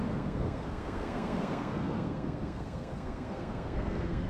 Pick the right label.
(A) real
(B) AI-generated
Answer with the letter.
B